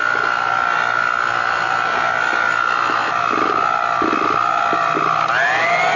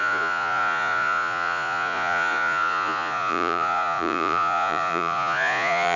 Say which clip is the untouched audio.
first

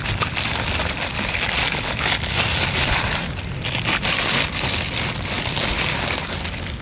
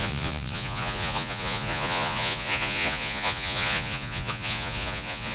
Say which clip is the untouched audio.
first